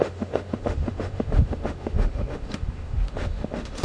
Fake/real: fake